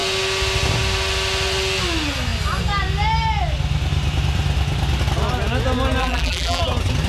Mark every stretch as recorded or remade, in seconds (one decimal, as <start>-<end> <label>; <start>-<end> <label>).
0.0-6.0 recorded; 6.0-6.6 remade; 6.6-7.1 recorded